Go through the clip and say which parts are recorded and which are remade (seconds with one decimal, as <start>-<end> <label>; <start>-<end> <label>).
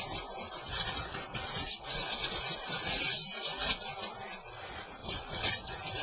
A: 0.0-5.0 recorded; 5.0-5.5 remade; 5.5-6.0 recorded